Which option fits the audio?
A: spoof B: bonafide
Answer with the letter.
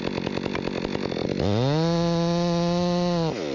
B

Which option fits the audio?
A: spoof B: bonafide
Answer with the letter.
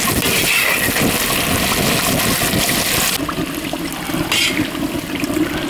B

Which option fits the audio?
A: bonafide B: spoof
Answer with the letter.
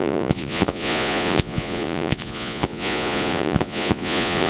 B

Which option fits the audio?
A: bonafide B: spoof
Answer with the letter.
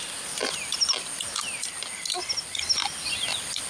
A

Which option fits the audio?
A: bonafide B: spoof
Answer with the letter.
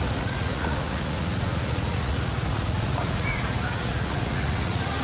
B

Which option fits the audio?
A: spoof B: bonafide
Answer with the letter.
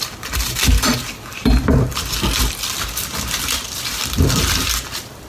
A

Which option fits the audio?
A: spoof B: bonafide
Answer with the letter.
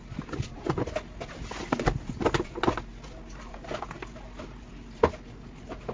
B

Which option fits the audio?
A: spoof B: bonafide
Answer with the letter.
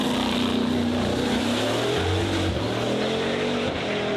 B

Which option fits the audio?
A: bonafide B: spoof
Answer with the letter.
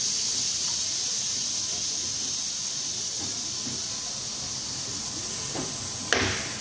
A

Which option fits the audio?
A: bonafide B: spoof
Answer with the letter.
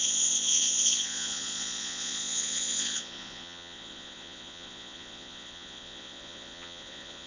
B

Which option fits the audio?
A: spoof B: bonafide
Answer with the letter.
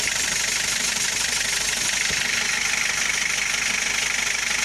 B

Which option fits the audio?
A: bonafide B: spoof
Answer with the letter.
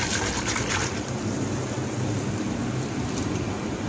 A